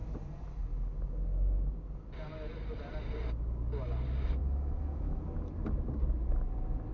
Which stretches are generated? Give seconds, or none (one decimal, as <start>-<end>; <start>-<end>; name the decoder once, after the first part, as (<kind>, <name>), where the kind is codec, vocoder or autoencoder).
4.4-5.2 (autoencoder, DAC-VAE)